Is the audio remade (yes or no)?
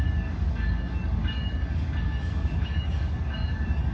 yes